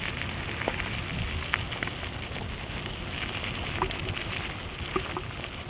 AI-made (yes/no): no